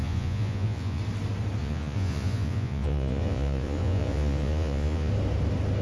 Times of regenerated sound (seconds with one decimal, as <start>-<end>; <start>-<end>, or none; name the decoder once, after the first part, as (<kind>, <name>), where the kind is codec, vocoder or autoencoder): 0.0-1.0 (vocoder, Vocos); 1.6-5.1